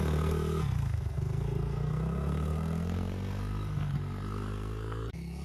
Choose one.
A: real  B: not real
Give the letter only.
B